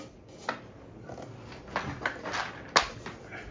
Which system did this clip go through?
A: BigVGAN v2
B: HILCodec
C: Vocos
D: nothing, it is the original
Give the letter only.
D